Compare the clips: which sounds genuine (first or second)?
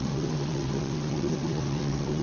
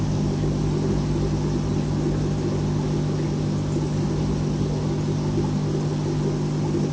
second